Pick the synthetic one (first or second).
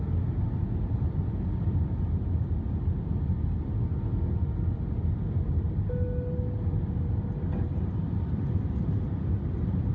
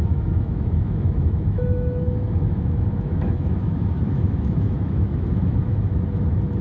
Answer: second